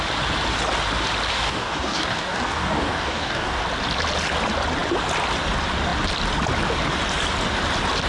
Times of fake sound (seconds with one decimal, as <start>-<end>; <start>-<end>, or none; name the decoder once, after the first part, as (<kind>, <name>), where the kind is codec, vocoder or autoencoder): 1.3-3.6 (codec, DAC)